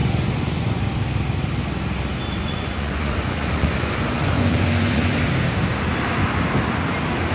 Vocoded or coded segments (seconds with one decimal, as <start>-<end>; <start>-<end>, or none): 0.0-0.8; 2.4-5.1